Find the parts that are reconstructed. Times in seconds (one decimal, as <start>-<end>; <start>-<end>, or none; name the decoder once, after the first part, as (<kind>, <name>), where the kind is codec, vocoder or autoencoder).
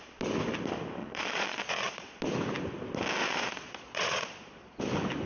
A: 1.0-2.2 (vocoder, Vocos); 3.2-4.8